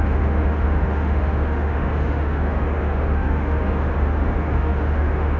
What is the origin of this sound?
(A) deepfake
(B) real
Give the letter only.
A